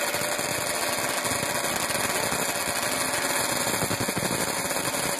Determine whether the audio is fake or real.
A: real